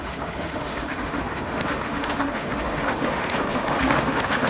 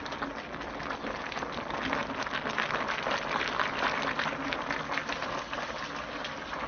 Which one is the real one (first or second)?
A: second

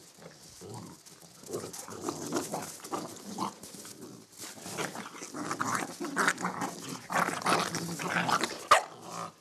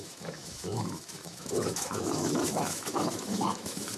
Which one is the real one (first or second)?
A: first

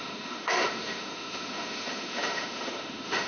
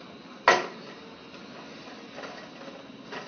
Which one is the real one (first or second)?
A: second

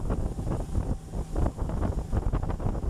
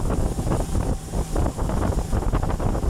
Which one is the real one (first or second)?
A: first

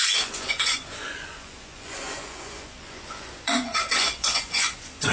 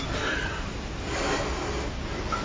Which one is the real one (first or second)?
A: second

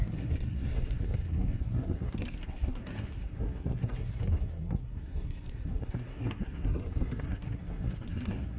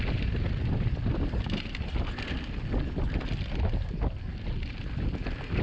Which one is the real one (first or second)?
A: second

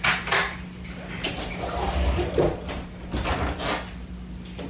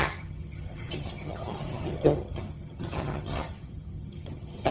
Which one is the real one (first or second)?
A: first